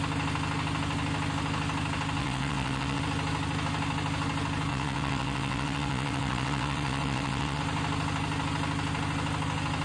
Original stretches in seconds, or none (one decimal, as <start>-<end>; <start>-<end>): 0.0-2.2; 3.0-4.7; 7.6-9.8

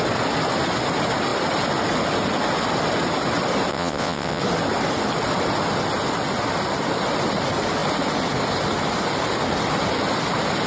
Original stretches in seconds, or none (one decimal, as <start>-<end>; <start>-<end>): 0.0-3.7; 4.4-10.7

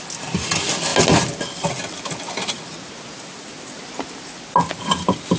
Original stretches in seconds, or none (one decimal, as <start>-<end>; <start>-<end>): 0.0-5.4

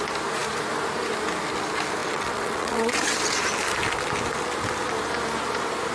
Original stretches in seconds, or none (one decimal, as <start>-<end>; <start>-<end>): 0.0-2.0; 3.4-5.9